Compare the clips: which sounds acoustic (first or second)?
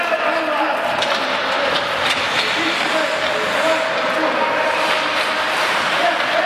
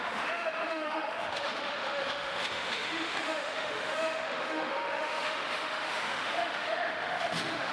first